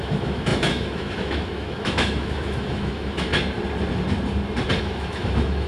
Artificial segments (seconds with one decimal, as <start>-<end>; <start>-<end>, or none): 0.0-3.3; 4.8-5.7